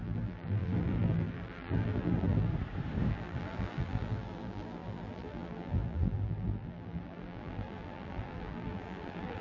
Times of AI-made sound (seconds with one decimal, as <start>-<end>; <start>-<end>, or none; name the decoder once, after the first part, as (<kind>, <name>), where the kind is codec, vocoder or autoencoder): 0.0-2.5 (vocoder, BigVGAN v2); 3.1-9.4